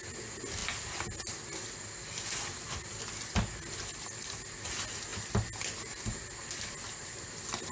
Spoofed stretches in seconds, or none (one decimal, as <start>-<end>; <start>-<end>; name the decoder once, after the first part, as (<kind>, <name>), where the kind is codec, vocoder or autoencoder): none